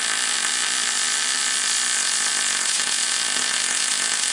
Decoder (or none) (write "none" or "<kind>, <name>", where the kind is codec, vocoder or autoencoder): none